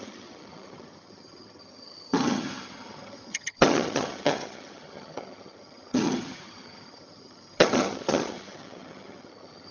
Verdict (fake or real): fake